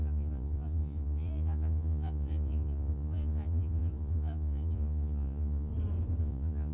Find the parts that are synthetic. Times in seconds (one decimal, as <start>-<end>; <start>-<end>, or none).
0.0-5.7; 6.2-6.7